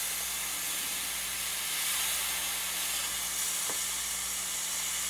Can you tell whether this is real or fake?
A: real